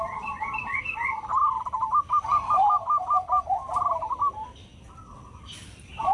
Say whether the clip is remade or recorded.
recorded